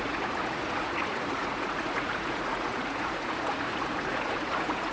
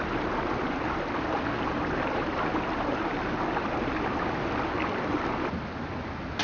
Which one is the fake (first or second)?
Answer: first